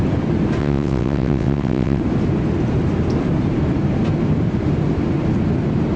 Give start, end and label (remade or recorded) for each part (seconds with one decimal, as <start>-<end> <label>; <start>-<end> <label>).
0.0-0.6 recorded; 0.6-2.0 remade; 2.0-6.0 recorded